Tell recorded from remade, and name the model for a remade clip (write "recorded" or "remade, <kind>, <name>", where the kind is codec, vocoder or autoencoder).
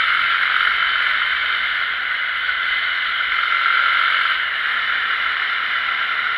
recorded